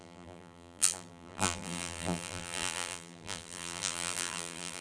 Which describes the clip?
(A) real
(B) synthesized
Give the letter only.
B